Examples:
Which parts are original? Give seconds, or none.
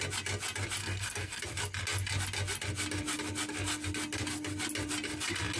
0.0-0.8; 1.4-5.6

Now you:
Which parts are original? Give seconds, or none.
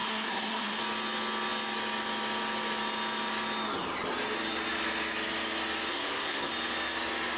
0.8-5.9; 6.5-7.4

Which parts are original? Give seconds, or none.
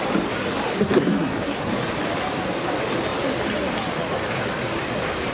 0.0-0.7; 1.7-5.3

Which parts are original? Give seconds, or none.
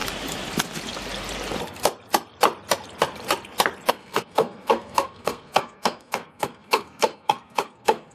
0.0-3.9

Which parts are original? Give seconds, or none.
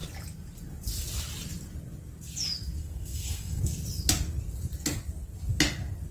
0.0-2.8; 3.6-6.1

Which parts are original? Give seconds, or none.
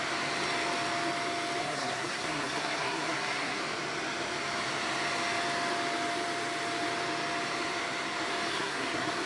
0.0-1.6; 3.6-8.5